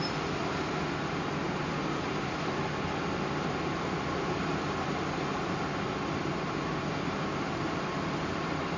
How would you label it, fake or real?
real